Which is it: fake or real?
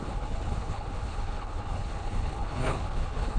fake